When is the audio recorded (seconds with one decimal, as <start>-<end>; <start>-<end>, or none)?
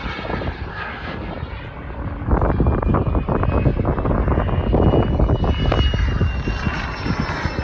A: 0.0-0.7; 1.3-7.6